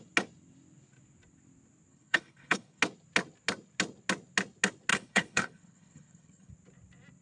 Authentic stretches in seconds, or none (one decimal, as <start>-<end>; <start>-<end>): 0.0-1.9; 2.8-4.9; 6.5-7.2